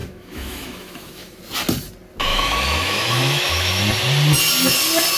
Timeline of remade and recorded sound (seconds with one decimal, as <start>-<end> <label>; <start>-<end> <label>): 0.0-1.4 remade; 1.4-2.3 recorded; 2.3-3.8 remade; 3.8-5.2 recorded